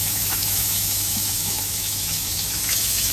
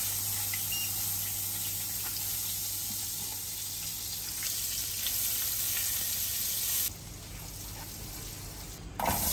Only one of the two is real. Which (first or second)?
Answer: second